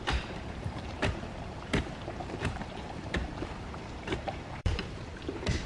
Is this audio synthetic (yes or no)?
yes